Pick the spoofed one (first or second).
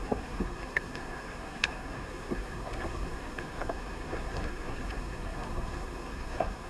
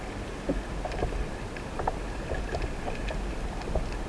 first